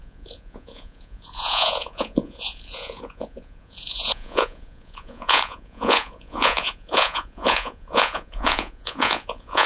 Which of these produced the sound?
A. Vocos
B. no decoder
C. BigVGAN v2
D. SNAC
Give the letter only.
A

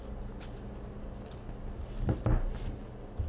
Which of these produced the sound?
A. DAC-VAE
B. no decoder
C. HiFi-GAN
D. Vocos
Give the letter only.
B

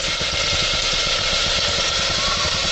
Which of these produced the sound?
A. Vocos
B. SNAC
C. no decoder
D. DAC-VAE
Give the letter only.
C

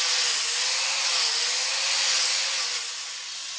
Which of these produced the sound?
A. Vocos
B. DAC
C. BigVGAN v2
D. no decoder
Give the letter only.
D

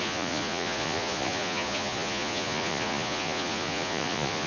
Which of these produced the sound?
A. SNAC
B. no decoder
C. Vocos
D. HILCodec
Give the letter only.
C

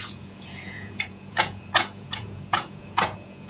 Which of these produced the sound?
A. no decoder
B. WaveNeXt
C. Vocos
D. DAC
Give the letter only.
C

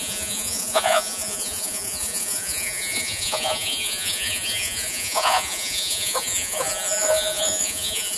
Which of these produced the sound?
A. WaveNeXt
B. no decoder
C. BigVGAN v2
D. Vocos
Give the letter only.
D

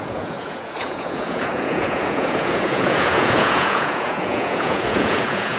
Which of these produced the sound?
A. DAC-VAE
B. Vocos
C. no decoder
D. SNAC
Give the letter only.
B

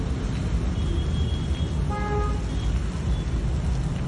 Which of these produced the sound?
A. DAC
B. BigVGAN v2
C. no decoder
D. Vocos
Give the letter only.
C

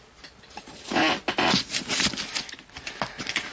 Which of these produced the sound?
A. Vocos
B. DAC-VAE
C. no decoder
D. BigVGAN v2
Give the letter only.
C